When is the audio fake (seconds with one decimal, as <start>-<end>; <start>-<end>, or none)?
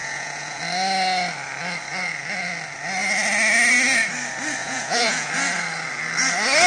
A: 0.0-0.6; 4.6-5.3